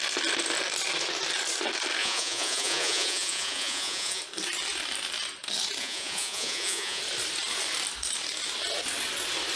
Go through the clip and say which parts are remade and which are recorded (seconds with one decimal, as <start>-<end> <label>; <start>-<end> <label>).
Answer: 0.0-2.0 recorded; 2.0-4.2 remade; 4.2-5.8 recorded; 5.8-7.0 remade; 7.0-9.6 recorded